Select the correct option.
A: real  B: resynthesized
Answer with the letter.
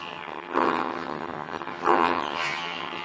B